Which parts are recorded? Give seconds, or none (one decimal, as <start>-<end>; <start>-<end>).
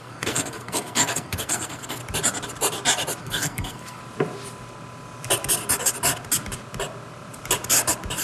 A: 2.0-3.2; 4.0-8.2